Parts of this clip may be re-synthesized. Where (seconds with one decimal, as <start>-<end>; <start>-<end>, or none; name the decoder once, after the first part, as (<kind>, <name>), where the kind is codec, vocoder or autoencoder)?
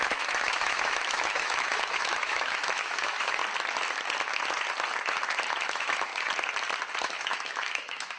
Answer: 0.0-3.4 (autoencoder, DAC-VAE); 5.6-6.1; 7.0-8.2